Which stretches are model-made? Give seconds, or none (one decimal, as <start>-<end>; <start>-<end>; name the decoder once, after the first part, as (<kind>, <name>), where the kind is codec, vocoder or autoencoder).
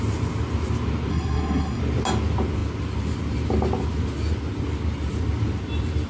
1.1-1.8 (codec, SNAC)